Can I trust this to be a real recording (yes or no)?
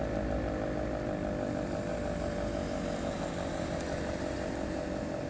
yes